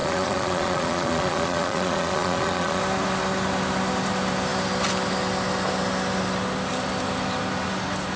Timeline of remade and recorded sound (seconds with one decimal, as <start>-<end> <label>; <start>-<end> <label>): 0.0-2.8 remade; 2.8-8.2 recorded